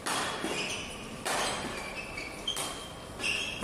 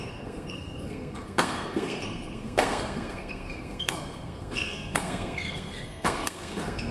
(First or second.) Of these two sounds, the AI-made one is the second